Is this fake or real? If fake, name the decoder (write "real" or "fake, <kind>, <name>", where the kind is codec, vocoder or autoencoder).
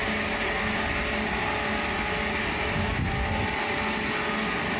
real